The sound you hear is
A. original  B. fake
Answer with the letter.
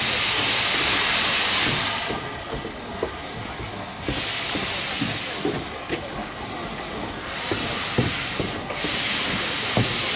A